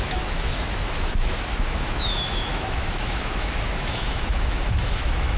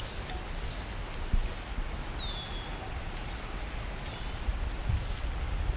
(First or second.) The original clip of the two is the second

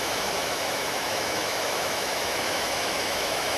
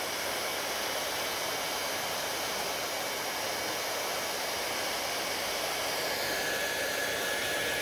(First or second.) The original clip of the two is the second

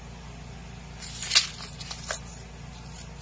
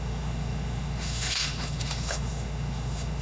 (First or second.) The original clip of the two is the first